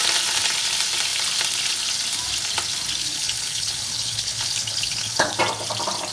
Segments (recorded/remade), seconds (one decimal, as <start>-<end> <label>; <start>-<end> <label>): 0.0-3.0 recorded; 3.0-5.4 remade; 5.4-6.1 recorded